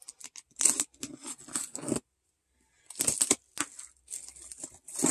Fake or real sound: real